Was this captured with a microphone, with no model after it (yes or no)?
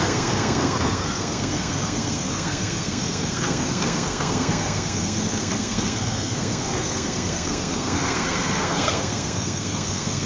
no